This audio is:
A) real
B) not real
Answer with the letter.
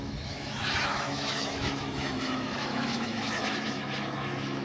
B